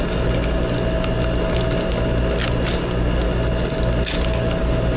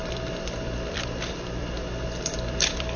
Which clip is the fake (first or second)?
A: second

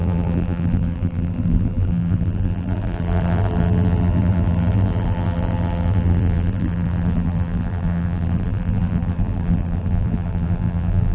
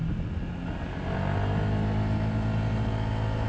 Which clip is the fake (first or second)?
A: first